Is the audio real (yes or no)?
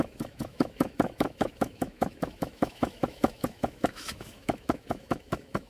no